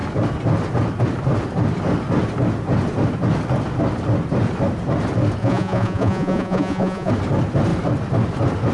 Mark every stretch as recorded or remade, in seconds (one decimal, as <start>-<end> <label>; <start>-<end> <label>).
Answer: 0.0-5.4 recorded; 5.4-7.1 remade; 7.1-8.7 recorded